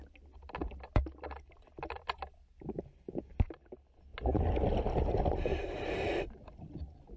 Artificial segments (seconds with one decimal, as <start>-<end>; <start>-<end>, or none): 5.5-6.1

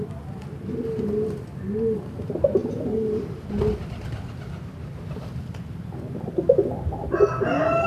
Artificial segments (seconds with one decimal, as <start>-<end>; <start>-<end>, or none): 2.6-3.5

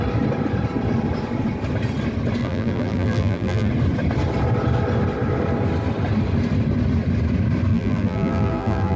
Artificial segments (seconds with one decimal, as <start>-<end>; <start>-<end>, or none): 2.4-3.7; 7.7-9.0

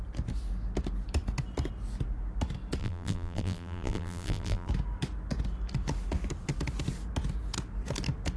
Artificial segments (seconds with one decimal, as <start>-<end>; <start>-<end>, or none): 2.8-4.7

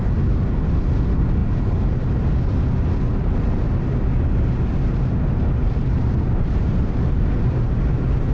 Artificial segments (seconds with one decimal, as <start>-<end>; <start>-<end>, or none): 1.4-2.0; 3.2-4.0; 5.6-8.3

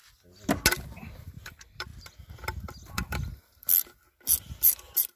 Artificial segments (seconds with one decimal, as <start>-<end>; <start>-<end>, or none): 0.8-1.9; 2.9-3.7; 4.4-5.2

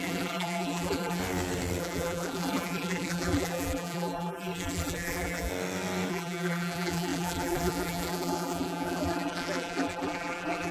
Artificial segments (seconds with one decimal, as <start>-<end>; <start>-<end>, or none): 0.0-1.2; 1.8-5.5; 6.1-10.7